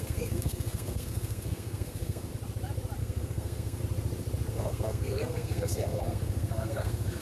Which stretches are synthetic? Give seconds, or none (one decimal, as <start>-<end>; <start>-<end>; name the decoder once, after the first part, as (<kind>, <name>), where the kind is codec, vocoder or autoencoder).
0.0-2.3 (codec, SNAC); 3.0-3.8; 4.5-7.2